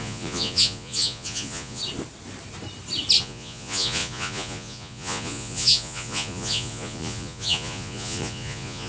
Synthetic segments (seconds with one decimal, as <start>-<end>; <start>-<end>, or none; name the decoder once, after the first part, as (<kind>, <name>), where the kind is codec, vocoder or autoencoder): 0.0-1.8 (vocoder, Vocos); 3.2-8.9